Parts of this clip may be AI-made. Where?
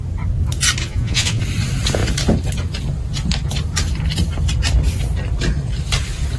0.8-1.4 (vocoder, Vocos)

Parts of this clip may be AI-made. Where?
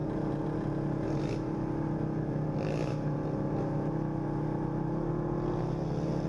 none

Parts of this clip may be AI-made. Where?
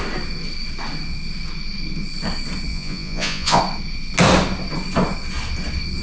2.7-3.6 (vocoder, Vocos)